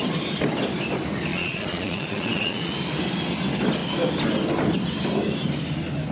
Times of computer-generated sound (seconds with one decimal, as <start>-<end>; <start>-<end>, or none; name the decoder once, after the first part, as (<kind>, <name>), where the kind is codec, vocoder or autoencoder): 1.3-2.7 (vocoder, Vocos)